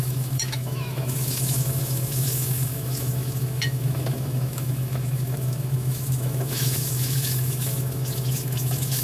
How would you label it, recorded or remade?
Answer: remade